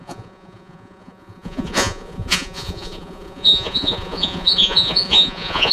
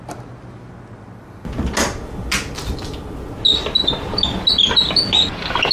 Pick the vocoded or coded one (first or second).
first